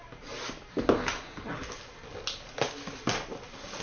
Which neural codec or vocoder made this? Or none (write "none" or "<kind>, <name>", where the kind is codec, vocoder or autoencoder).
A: none